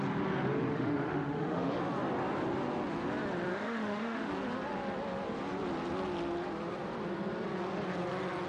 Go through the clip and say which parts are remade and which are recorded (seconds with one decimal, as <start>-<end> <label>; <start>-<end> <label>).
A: 0.0-0.7 recorded; 0.7-1.8 remade; 1.8-3.5 recorded; 3.5-4.3 remade; 4.3-8.5 recorded